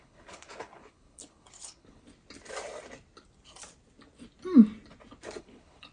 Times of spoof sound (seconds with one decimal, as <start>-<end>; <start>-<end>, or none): 0.0-2.1; 5.4-5.9